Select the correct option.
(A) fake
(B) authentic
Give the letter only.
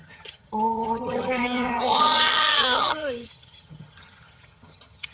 A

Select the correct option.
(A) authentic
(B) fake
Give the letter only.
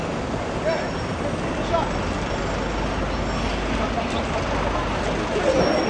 A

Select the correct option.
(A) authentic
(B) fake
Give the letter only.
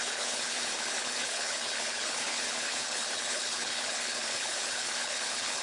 B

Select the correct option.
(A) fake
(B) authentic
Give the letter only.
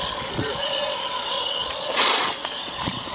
A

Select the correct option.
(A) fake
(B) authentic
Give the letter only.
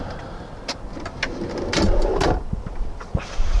B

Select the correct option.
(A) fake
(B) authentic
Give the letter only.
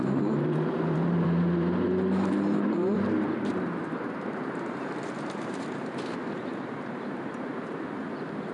A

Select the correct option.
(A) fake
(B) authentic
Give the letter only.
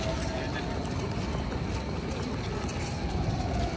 B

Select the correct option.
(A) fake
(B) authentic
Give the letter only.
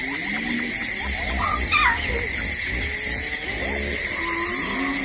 B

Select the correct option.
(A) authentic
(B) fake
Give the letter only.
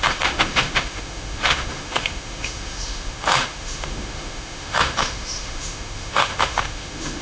B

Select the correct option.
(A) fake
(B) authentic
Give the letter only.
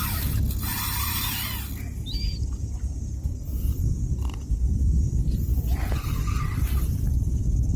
A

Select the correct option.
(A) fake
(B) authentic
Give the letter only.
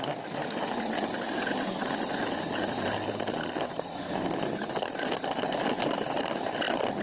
B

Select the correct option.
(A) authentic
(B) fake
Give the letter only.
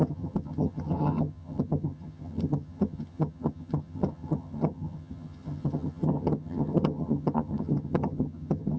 B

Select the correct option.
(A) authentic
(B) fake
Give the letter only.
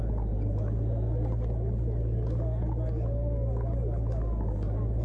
A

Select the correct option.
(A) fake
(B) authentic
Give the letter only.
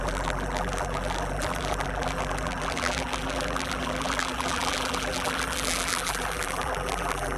A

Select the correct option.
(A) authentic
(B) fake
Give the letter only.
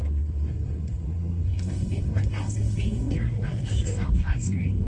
B